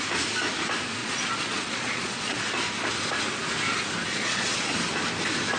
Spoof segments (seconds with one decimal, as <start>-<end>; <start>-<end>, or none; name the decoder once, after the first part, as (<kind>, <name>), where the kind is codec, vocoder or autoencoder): 1.0-2.4 (vocoder, Vocos); 4.1-4.7